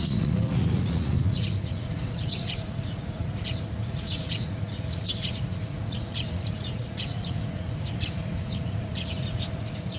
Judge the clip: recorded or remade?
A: remade